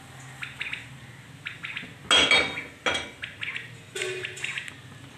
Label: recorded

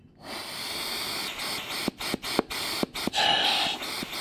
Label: recorded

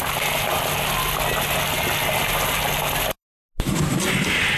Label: recorded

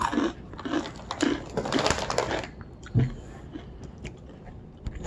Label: recorded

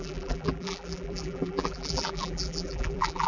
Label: remade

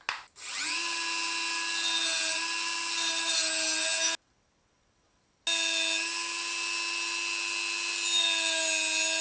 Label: recorded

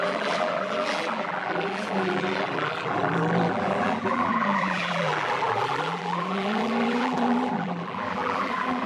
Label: remade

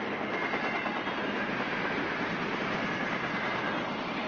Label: recorded